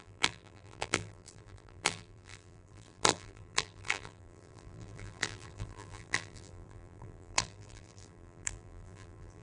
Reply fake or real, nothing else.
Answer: fake